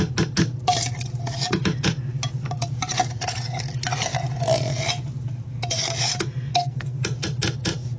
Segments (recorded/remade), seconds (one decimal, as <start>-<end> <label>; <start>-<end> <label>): 0.0-6.5 recorded; 6.5-7.0 remade; 7.0-8.0 recorded